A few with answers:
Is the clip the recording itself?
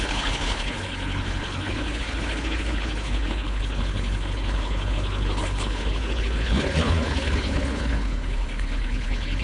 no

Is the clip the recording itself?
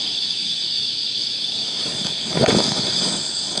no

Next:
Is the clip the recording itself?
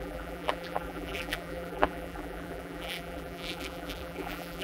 no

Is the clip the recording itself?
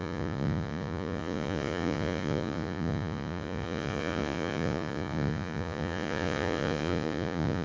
no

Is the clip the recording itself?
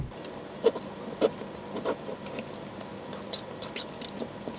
yes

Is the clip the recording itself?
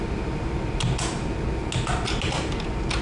yes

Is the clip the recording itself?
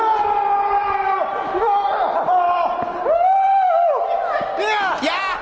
yes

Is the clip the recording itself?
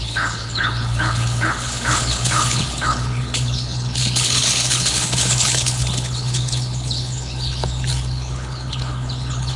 no